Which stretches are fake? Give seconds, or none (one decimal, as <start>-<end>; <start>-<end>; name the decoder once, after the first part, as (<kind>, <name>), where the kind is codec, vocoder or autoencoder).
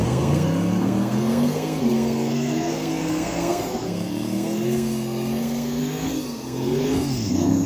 0.0-7.7 (codec, SNAC)